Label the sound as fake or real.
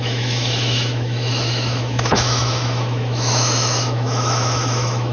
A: fake